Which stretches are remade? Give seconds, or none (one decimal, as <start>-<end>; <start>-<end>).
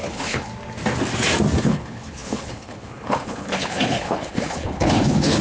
0.0-0.5; 1.6-5.4